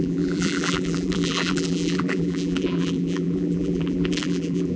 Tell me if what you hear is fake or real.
fake